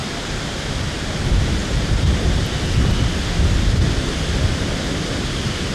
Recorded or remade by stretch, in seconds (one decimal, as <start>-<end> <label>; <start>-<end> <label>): 0.0-0.7 remade; 0.7-1.6 recorded; 1.6-2.4 remade; 2.4-5.7 recorded